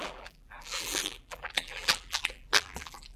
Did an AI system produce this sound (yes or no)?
yes